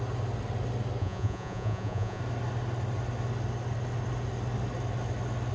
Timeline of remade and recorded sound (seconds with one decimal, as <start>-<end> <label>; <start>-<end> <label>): 0.0-1.0 recorded; 1.0-2.2 remade; 2.2-5.5 recorded

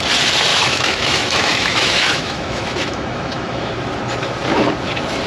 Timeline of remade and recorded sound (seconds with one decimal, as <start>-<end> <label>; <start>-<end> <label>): 0.0-0.5 recorded; 0.5-3.7 remade; 3.7-5.3 recorded

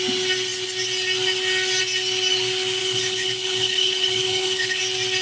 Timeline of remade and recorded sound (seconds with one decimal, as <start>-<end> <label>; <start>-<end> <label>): 0.0-2.8 recorded; 2.8-4.8 remade; 4.8-5.2 recorded